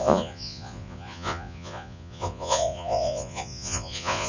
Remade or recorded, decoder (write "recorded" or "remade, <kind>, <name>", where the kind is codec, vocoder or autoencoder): remade, vocoder, Vocos